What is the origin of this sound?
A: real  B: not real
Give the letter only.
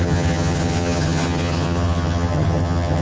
B